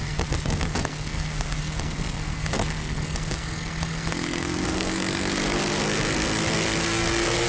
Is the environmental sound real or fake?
fake